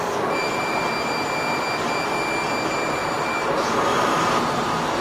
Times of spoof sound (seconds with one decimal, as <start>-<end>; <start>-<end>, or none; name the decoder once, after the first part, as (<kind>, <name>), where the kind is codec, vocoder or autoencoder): 0.4-0.9 (vocoder, BigVGAN v2); 3.0-4.6